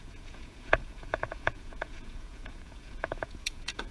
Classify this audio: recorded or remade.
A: remade